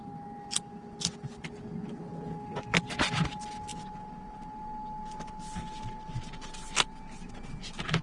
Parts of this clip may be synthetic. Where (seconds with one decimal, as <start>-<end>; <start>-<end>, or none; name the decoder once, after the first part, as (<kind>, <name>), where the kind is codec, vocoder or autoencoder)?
none